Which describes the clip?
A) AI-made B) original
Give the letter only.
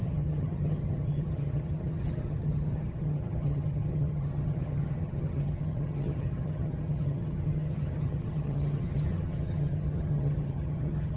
A